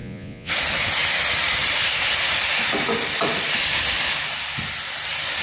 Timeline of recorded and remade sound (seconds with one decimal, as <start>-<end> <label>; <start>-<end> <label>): 0.0-0.5 remade; 0.5-5.4 recorded